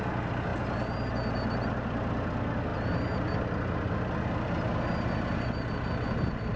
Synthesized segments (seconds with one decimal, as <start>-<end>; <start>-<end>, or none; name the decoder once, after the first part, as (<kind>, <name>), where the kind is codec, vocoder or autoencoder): none